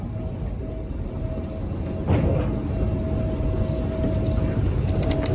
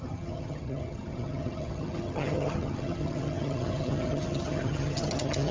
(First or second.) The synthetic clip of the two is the second